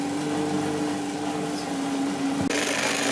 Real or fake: real